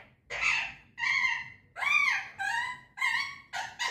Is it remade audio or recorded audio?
recorded